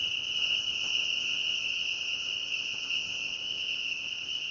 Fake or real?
fake